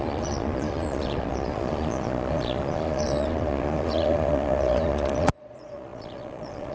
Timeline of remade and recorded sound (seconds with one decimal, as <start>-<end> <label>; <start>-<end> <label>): 0.0-6.7 remade